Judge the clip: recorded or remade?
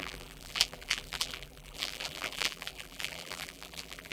remade